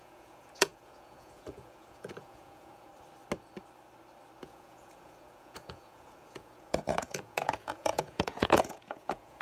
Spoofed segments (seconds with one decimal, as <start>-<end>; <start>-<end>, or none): 0.0-2.9; 4.4-9.4